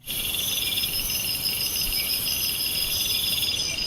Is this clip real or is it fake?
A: fake